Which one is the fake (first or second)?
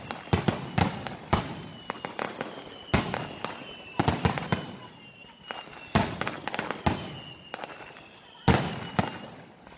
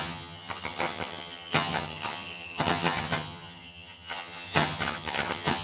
second